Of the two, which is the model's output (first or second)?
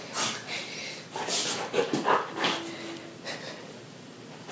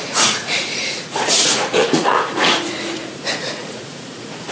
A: second